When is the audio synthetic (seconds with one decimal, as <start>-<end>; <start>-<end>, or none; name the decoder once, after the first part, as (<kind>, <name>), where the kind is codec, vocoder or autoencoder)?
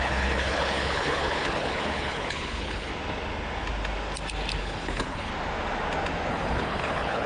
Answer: 0.0-2.9 (codec, HILCodec); 4.6-5.3; 6.3-7.3